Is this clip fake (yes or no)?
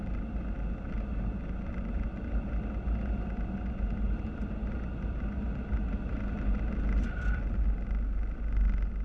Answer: no